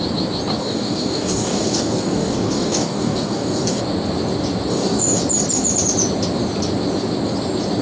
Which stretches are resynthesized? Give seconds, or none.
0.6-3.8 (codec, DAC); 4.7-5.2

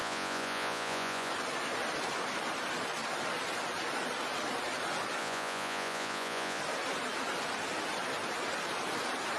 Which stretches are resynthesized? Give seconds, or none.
0.0-1.3 (vocoder, Vocos); 5.2-6.6

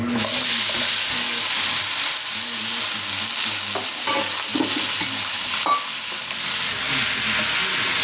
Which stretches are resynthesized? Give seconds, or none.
none

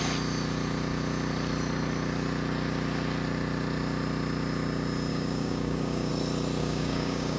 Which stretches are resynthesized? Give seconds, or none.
5.1-6.1 (codec, DAC); 6.6-7.4

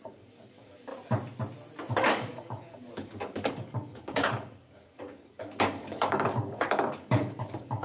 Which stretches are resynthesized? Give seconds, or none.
0.0-0.9 (codec, DAC); 1.9-7.8